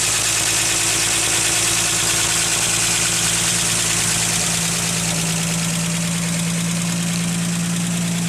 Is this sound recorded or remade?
recorded